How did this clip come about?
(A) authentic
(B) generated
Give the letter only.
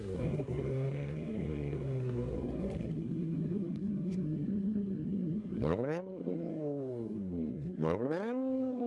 B